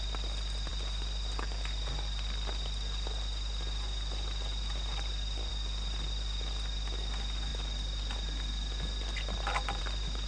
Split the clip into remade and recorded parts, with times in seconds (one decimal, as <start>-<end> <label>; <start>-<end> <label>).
0.0-10.3 recorded